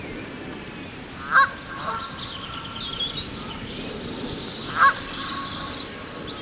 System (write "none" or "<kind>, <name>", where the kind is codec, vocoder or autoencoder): none